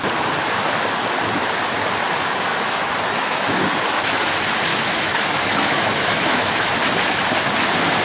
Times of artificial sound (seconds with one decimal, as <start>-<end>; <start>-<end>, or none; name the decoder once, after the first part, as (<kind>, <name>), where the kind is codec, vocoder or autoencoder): 2.5-3.7 (autoencoder, DAC-VAE); 4.7-6.7